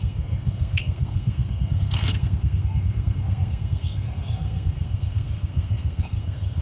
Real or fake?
fake